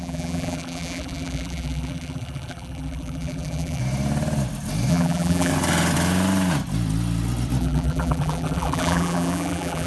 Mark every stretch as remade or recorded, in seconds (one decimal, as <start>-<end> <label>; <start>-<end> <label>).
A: 0.0-3.8 remade; 3.8-4.9 recorded; 4.9-5.5 remade; 5.5-7.6 recorded; 7.6-9.9 remade

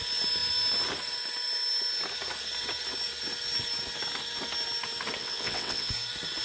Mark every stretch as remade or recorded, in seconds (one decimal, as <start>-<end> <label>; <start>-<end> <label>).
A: 0.0-5.2 recorded; 5.2-5.9 remade; 5.9-6.4 recorded

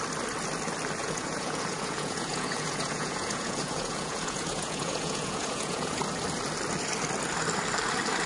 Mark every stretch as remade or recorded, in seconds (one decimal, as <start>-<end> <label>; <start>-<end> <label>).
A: 0.0-1.0 recorded; 1.0-6.0 remade; 6.0-8.3 recorded

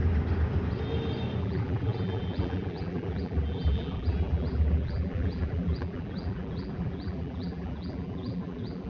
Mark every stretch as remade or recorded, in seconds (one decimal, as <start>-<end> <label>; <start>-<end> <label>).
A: 0.0-1.4 recorded; 1.4-8.9 remade

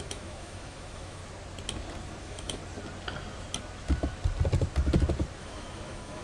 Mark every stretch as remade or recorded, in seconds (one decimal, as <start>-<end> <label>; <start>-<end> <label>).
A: 0.0-1.2 remade; 1.2-2.2 recorded; 2.2-2.6 remade; 2.6-5.4 recorded; 5.4-6.2 remade

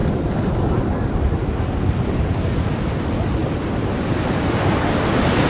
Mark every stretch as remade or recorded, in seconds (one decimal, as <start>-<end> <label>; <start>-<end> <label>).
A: 0.0-3.4 recorded; 3.4-4.0 remade; 4.0-5.5 recorded

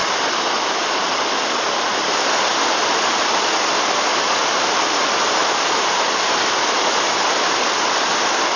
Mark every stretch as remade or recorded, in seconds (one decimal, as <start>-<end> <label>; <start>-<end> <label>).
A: 0.0-1.9 recorded; 1.9-3.2 remade; 3.2-4.4 recorded; 4.4-5.0 remade; 5.0-8.6 recorded

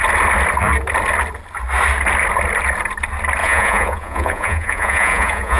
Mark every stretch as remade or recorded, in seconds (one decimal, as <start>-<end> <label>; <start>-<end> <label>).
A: 0.0-3.4 recorded; 3.4-5.6 remade